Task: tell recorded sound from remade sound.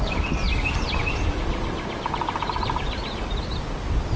recorded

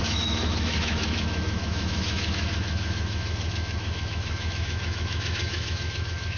remade